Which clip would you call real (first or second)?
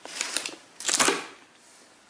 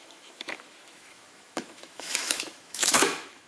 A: first